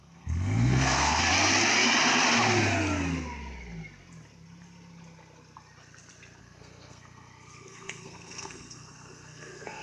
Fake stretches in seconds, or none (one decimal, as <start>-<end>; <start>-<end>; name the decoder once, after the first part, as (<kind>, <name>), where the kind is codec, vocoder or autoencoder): 0.0-1.3 (codec, SNAC); 6.4-9.8